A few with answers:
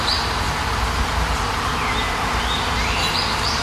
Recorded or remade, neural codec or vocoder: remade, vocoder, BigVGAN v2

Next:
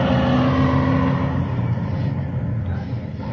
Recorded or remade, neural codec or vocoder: recorded